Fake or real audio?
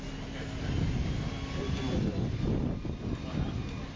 real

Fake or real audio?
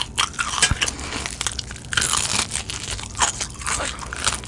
real